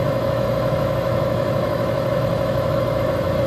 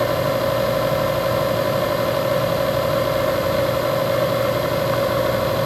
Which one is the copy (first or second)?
first